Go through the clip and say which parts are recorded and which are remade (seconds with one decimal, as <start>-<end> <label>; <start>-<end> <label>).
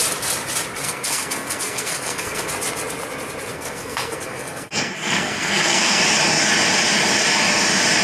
0.0-0.8 recorded; 0.8-2.5 remade; 2.5-3.5 recorded; 3.5-6.0 remade; 6.0-8.0 recorded